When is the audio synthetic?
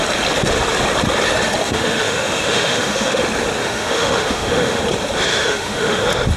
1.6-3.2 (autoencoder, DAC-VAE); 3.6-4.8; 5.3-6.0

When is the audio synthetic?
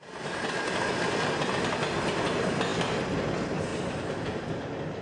none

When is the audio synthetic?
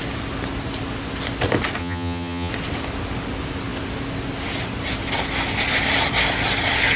1.8-2.5 (vocoder, HiFi-GAN)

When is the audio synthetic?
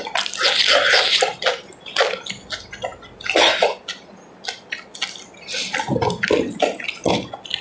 none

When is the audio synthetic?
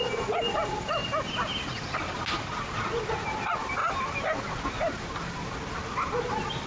none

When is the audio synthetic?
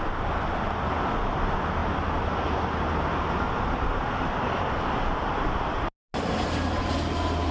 none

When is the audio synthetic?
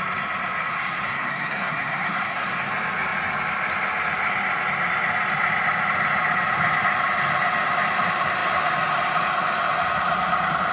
0.7-2.7 (codec, SNAC)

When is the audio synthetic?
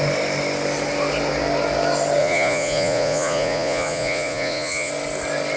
2.2-4.9 (vocoder, Vocos)